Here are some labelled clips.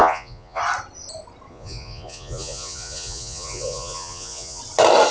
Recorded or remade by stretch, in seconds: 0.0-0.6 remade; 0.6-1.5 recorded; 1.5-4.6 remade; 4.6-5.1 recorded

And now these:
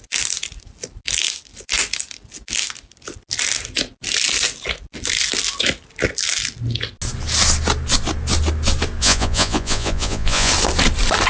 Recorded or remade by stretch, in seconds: 0.0-9.0 recorded; 9.0-10.5 remade; 10.5-11.3 recorded

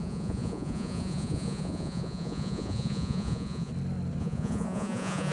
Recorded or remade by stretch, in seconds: 0.0-3.7 remade; 3.7-4.2 recorded; 4.2-5.3 remade

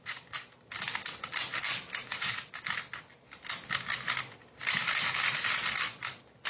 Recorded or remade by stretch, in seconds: 0.0-2.0 recorded; 2.0-2.5 remade; 2.5-6.5 recorded

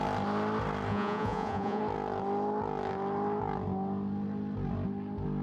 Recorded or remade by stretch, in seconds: 0.0-0.9 recorded; 0.9-1.8 remade; 1.8-5.4 recorded

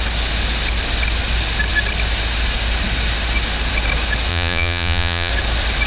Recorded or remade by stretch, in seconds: 0.0-4.3 recorded; 4.3-5.3 remade; 5.3-5.9 recorded